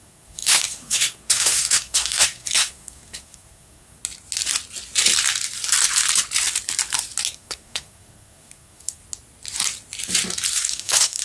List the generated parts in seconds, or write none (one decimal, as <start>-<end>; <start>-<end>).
0.0-4.0; 7.3-9.0; 10.5-11.2